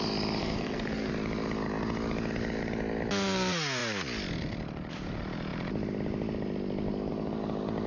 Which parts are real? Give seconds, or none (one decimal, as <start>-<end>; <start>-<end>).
0.0-0.4; 1.1-7.9